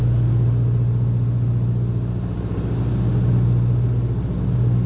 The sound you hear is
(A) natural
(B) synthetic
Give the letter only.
A